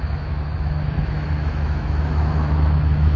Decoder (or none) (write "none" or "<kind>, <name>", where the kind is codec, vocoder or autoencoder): autoencoder, DAC-VAE